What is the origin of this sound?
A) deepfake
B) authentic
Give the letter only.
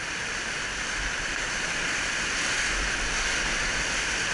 B